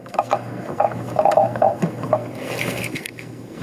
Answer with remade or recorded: remade